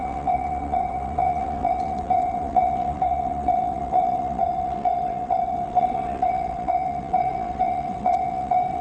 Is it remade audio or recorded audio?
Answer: remade